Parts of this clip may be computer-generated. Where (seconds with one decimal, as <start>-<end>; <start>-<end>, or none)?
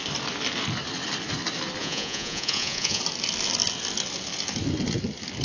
1.8-3.0